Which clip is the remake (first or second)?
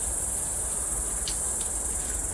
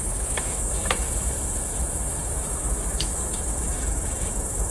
second